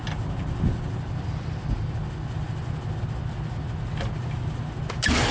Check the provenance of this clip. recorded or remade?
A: recorded